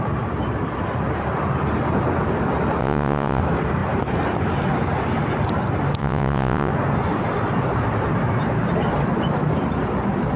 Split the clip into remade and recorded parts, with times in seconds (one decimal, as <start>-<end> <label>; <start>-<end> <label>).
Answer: 0.0-2.8 recorded; 2.8-3.4 remade; 3.4-6.0 recorded; 6.0-6.7 remade; 6.7-10.4 recorded